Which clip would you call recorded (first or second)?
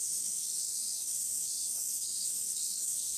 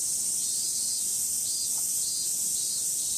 second